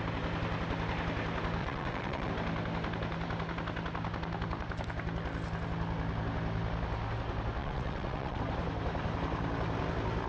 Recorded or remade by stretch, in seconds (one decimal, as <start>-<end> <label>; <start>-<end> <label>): 0.0-1.6 recorded; 1.6-2.3 remade; 2.3-7.6 recorded; 7.6-8.4 remade; 8.4-10.3 recorded